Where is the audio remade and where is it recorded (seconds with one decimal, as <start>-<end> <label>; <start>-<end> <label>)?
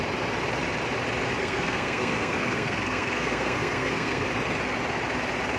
0.0-1.4 recorded; 1.4-4.3 remade; 4.3-5.6 recorded